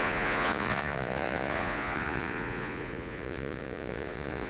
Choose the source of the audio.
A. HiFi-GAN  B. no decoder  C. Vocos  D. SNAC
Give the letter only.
C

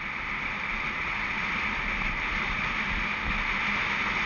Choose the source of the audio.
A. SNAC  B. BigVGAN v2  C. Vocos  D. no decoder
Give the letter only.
D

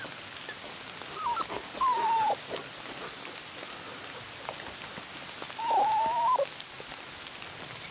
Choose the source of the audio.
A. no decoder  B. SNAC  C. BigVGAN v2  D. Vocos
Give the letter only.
A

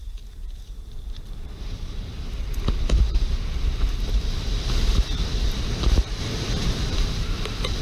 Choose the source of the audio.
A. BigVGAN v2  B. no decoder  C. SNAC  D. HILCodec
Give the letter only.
A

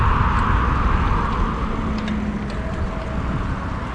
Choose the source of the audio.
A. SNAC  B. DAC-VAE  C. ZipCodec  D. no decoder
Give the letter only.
D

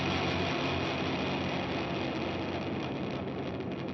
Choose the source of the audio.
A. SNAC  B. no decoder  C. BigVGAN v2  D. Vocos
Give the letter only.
B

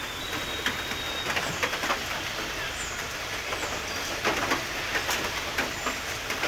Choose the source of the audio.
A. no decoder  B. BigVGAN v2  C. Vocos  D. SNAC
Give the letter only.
A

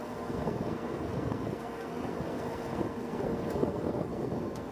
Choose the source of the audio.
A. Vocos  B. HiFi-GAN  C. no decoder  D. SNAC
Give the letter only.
D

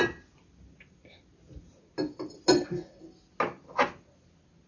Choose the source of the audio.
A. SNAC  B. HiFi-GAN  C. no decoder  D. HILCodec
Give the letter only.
C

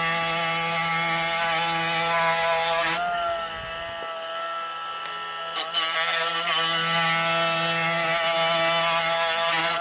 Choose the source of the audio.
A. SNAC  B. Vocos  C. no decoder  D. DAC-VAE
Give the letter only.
C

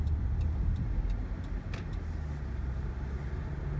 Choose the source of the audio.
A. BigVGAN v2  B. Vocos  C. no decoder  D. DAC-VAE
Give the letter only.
C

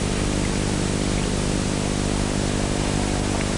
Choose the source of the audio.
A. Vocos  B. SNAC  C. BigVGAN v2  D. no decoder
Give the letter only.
D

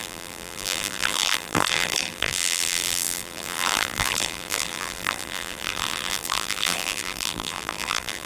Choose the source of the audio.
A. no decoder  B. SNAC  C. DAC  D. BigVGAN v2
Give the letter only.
D